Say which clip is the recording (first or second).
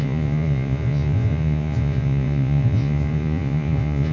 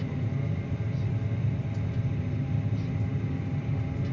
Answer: second